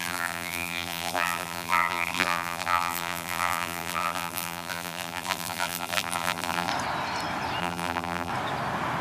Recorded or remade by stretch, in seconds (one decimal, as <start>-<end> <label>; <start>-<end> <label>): 0.0-6.7 remade; 6.7-7.6 recorded; 7.6-8.3 remade; 8.3-9.0 recorded